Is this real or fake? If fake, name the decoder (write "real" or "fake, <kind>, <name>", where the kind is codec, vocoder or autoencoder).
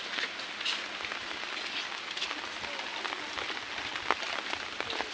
real